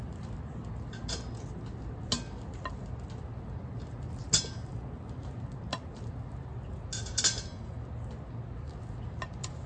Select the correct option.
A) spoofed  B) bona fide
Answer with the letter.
B